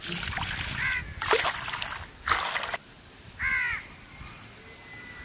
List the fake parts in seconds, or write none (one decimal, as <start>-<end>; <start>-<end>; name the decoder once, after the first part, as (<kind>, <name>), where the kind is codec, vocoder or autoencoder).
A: none